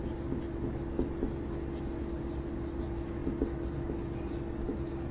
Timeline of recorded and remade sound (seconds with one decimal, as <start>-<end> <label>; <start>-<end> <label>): 0.0-5.1 recorded

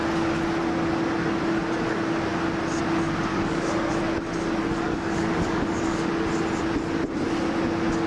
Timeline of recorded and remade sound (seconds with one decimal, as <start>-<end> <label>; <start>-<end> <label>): 0.0-3.3 recorded; 3.3-4.0 remade; 4.0-4.6 recorded; 4.6-6.1 remade; 6.1-8.1 recorded

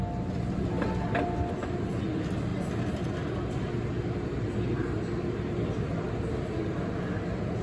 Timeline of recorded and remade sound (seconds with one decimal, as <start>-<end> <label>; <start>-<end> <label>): 0.0-7.6 recorded

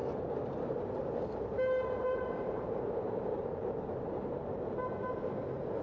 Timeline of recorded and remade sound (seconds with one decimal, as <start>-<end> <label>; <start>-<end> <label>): 0.0-1.0 recorded; 1.0-4.5 remade; 4.5-5.8 recorded

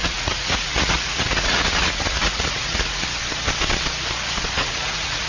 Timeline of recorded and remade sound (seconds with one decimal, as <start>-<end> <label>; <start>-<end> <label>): 0.0-3.0 remade; 3.0-4.6 recorded; 4.6-5.3 remade

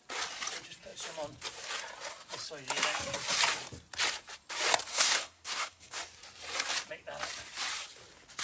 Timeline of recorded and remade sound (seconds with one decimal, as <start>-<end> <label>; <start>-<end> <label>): 0.0-4.9 recorded; 4.9-6.0 remade; 6.0-8.4 recorded

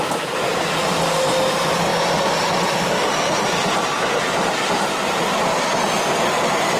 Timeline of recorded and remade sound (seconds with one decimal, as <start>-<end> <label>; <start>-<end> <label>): 0.0-0.5 recorded; 0.5-1.1 remade; 1.1-6.8 recorded